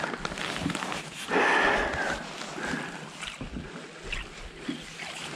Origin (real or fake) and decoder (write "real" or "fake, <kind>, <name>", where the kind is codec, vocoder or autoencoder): real